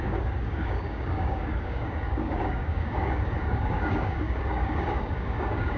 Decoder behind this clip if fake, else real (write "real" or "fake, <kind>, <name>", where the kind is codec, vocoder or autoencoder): fake, codec, DAC